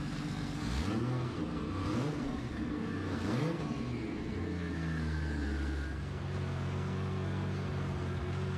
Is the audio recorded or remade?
remade